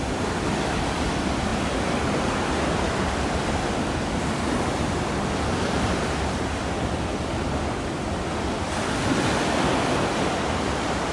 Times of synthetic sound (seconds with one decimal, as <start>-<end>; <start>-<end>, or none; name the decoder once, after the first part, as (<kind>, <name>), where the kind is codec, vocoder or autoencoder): 0.0-11.1 (vocoder, BigVGAN v2)